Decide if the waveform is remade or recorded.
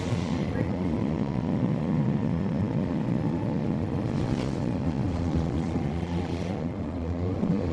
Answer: remade